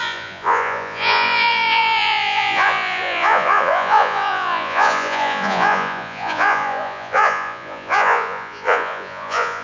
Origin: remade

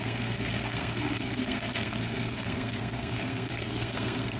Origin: remade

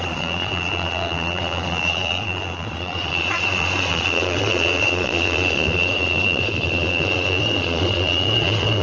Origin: remade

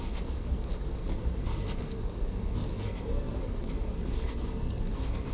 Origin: remade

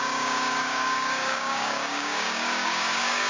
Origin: remade